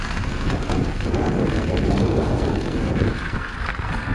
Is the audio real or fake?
fake